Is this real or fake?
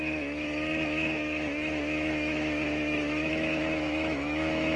fake